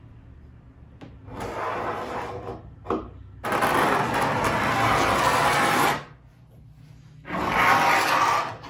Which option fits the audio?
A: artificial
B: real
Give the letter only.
B